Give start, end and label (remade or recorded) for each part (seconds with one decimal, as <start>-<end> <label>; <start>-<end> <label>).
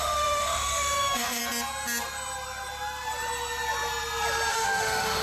0.0-1.4 remade; 1.4-4.5 recorded; 4.5-5.2 remade